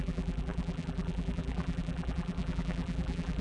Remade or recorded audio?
remade